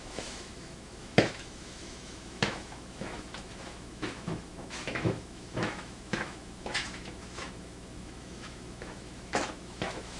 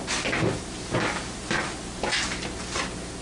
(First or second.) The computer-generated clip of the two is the first